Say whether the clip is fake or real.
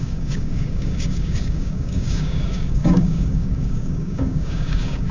fake